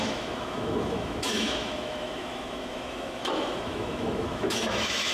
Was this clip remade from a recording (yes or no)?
yes